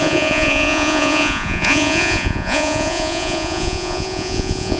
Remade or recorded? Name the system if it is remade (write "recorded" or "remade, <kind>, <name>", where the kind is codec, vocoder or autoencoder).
remade, vocoder, Vocos